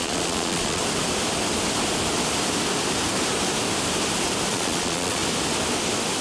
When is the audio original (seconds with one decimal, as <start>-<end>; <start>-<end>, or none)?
0.8-4.5; 5.2-6.2